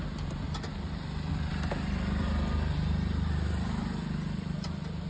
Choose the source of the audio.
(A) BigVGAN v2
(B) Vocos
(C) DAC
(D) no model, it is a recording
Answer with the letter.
A